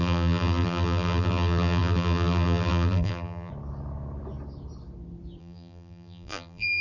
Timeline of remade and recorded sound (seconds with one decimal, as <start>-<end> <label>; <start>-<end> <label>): 0.0-3.5 remade; 3.5-5.4 recorded; 5.4-6.8 remade